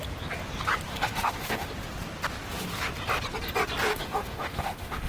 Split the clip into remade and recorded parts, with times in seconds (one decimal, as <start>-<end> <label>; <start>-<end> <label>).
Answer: 0.0-0.9 recorded; 0.9-1.7 remade; 1.7-3.9 recorded; 3.9-5.1 remade

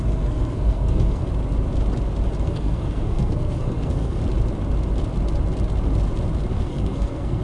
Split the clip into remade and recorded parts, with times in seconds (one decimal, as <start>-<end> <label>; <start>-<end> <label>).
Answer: 0.0-1.2 remade; 1.2-2.4 recorded; 2.4-4.2 remade; 4.2-6.5 recorded; 6.5-7.4 remade

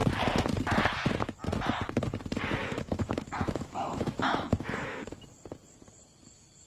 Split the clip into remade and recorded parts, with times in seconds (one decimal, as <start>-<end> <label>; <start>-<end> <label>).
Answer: 0.0-2.6 recorded; 2.6-5.2 remade; 5.2-6.7 recorded

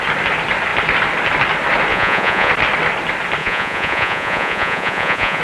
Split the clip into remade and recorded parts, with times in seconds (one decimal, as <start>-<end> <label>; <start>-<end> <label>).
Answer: 0.0-1.9 recorded; 1.9-2.5 remade; 2.5-3.4 recorded; 3.4-5.4 remade

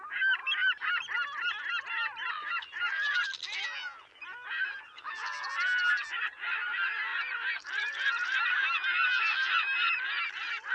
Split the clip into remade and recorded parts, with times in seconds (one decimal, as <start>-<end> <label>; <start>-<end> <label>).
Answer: 0.0-0.4 remade; 0.4-2.3 recorded; 2.3-10.7 remade

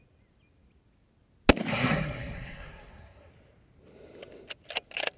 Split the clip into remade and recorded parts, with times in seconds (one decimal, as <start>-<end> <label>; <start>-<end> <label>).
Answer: 0.0-1.7 recorded; 1.7-3.3 remade; 3.3-5.2 recorded

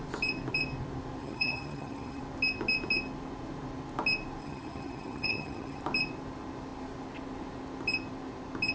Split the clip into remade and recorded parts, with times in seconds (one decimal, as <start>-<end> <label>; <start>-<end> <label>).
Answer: 0.0-1.2 recorded; 1.2-2.2 remade; 2.2-4.4 recorded; 4.4-5.8 remade; 5.8-8.7 recorded